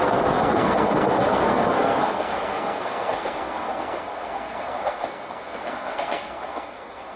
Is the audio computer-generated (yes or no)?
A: yes